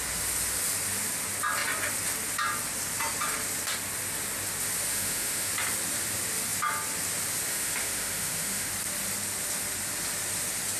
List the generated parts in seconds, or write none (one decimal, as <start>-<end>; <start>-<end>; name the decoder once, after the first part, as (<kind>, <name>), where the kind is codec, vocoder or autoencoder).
4.9-5.5 (autoencoder, DAC-VAE); 7.5-8.7